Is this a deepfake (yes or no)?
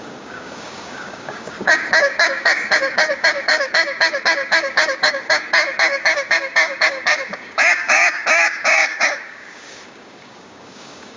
yes